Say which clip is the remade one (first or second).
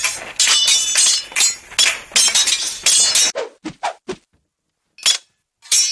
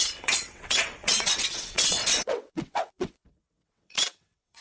second